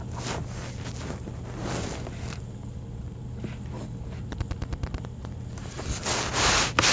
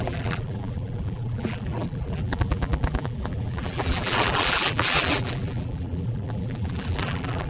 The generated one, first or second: second